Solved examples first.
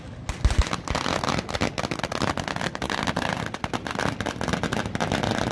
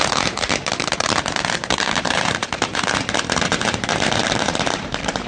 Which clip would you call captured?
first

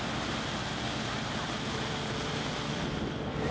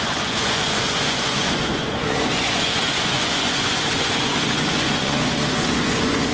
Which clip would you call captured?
first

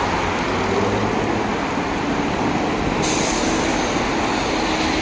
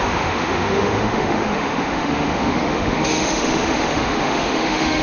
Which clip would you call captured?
first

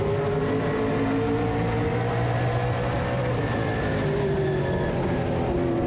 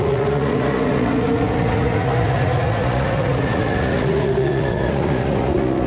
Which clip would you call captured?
first